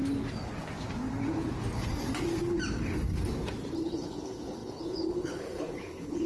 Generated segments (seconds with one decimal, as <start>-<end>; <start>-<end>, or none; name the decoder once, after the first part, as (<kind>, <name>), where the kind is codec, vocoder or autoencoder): 3.8-6.3 (codec, HILCodec)